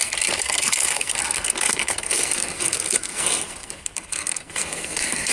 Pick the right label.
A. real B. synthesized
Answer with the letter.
B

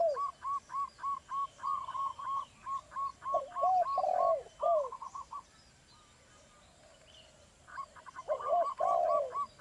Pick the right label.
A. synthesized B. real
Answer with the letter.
B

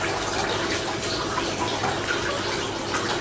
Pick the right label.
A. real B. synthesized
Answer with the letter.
A